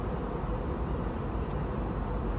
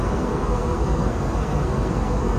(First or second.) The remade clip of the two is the second